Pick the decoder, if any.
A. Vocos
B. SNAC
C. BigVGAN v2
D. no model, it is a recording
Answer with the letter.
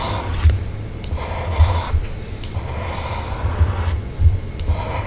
D